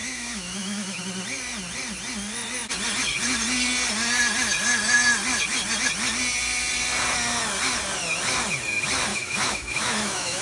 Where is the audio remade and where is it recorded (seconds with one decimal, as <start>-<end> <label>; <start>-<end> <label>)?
0.0-1.0 remade; 1.0-9.1 recorded; 9.1-10.4 remade

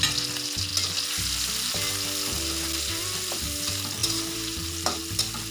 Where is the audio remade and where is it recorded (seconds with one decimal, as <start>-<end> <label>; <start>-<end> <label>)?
0.0-4.0 recorded; 4.0-5.0 remade; 5.0-5.5 recorded

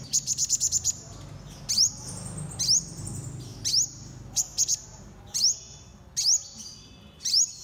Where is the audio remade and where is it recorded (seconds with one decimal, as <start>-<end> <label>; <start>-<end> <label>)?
0.0-7.6 recorded